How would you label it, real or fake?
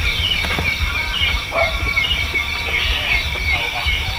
fake